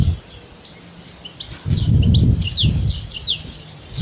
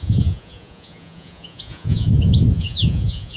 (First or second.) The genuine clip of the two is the first